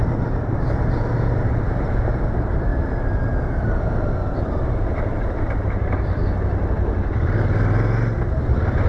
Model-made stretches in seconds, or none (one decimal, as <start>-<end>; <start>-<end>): 0.0-2.7; 3.4-6.2; 8.4-8.9